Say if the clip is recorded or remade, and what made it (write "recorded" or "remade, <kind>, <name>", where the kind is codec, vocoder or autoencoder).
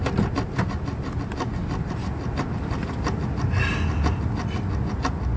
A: recorded